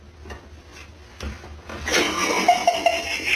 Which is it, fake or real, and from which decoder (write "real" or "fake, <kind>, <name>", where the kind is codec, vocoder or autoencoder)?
real